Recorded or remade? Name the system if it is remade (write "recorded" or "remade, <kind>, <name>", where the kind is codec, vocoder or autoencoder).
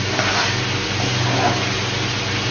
recorded